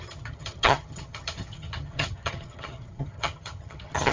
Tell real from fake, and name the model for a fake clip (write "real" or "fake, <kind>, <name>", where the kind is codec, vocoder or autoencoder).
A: fake, vocoder, HiFi-GAN